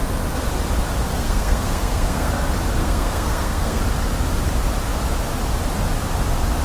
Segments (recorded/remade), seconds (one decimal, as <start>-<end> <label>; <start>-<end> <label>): 0.0-1.1 recorded; 1.1-2.3 remade; 2.3-2.8 recorded; 2.8-3.8 remade; 3.8-6.6 recorded